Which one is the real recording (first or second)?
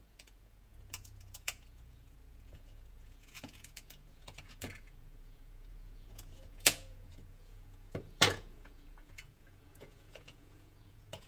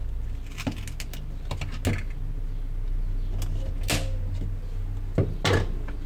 second